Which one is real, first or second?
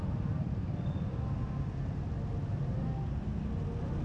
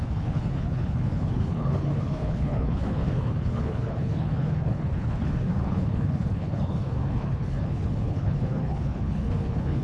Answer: first